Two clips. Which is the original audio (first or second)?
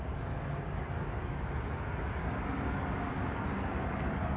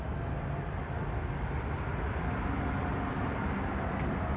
second